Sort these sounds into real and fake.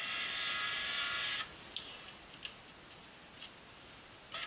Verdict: real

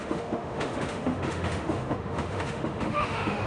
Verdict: fake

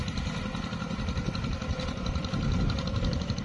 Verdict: real